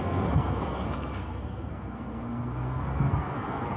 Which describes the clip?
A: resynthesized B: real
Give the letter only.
A